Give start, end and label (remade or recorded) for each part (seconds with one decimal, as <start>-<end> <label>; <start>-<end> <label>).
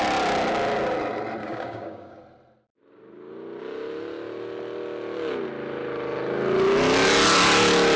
0.0-1.4 recorded; 1.4-2.2 remade; 2.2-8.0 recorded